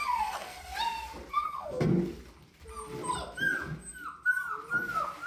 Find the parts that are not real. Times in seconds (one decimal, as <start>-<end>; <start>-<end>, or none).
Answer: 0.0-0.7; 1.3-1.9